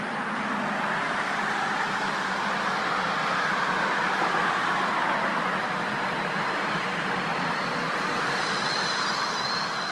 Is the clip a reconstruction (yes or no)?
no